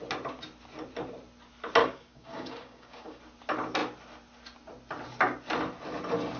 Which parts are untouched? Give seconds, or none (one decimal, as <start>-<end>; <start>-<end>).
0.0-1.8; 3.2-6.4